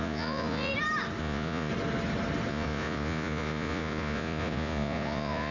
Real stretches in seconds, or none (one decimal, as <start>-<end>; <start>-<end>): 0.7-1.2; 1.7-2.5